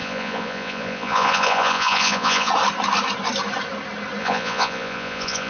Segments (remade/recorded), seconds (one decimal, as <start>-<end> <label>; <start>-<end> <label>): 0.0-2.5 remade; 2.5-4.2 recorded; 4.2-5.5 remade